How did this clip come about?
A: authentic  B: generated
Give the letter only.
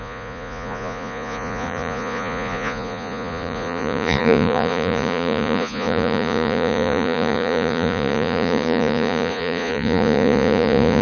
B